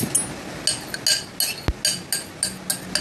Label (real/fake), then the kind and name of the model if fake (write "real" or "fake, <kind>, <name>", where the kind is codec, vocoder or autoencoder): real